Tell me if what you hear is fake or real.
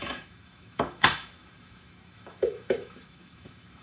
fake